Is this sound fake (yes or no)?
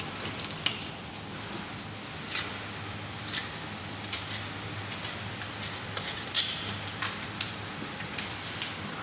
no